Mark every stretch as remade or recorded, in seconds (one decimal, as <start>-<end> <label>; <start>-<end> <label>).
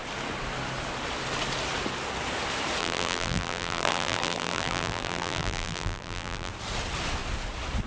0.0-2.8 recorded; 2.8-6.5 remade; 6.5-7.9 recorded